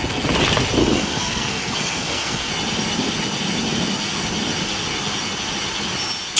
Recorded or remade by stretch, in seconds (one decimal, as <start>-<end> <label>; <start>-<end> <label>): 0.0-0.8 recorded; 0.8-2.5 remade; 2.5-6.4 recorded

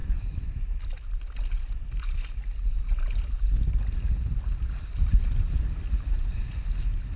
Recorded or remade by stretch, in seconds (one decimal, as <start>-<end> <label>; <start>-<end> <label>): 0.0-7.2 recorded

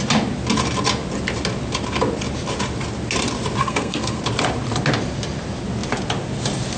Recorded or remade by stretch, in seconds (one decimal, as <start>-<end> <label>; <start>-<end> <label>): 0.0-3.6 recorded; 3.6-4.2 remade; 4.2-6.8 recorded

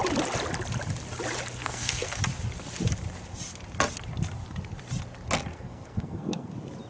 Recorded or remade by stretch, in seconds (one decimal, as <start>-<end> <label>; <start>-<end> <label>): 0.0-1.6 recorded; 1.6-2.2 remade; 2.2-5.5 recorded; 5.5-6.5 remade; 6.5-6.9 recorded

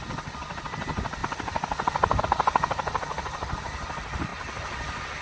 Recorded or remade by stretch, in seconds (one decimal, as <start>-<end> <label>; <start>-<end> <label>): 0.0-5.2 recorded

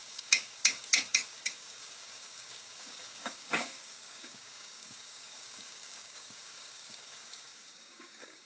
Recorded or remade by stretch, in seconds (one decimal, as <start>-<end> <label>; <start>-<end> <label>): 0.0-8.5 remade

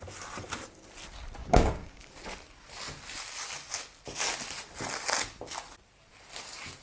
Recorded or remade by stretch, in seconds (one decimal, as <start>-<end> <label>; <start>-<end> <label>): 0.0-1.4 recorded; 1.4-2.1 remade; 2.1-6.8 recorded

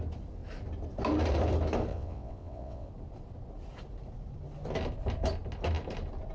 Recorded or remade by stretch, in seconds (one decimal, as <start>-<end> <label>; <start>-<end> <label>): 0.0-1.9 recorded; 1.9-2.9 remade; 2.9-6.3 recorded